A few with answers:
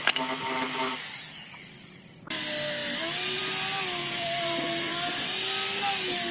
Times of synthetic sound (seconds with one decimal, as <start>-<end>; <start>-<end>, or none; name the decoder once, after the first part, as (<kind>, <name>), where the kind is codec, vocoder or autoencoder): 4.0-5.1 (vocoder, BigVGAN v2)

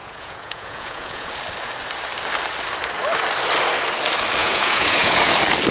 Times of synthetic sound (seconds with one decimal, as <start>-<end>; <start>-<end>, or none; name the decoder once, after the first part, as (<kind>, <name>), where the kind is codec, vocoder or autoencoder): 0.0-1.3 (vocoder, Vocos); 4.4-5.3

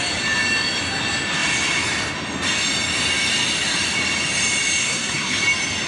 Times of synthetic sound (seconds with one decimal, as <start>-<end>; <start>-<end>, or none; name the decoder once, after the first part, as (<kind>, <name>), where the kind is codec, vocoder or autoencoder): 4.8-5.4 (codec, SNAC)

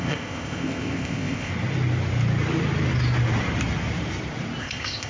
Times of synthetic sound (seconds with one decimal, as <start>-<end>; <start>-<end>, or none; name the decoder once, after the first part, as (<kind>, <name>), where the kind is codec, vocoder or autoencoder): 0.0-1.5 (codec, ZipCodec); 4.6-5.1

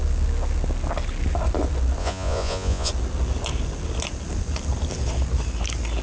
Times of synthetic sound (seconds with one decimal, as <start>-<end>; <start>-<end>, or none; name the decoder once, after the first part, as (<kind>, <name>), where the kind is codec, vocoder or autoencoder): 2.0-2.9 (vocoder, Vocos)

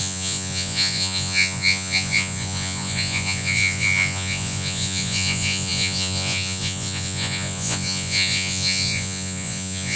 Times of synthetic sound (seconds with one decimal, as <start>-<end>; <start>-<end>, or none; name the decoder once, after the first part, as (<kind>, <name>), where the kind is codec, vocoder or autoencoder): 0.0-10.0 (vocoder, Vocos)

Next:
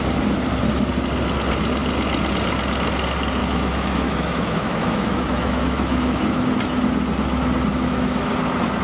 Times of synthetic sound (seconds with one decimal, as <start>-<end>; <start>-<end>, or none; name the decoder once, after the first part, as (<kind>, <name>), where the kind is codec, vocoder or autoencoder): 3.4-6.2 (autoencoder, DAC-VAE); 7.7-8.3

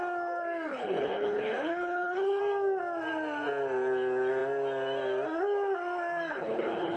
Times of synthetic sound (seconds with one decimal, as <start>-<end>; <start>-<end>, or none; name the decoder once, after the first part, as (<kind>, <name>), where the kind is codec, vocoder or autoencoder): 0.7-2.4 (codec, HILCodec); 6.3-7.0